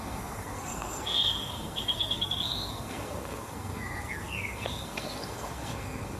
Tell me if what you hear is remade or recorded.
remade